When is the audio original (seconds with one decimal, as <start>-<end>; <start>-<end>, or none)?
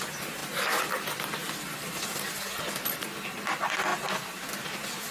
0.0-5.1